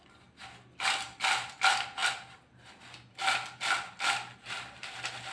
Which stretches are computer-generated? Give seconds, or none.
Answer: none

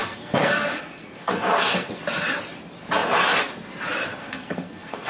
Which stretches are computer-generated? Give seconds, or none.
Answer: 0.0-2.0; 4.2-5.1